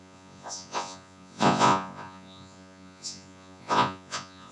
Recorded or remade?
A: remade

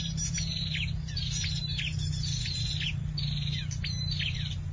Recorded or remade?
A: recorded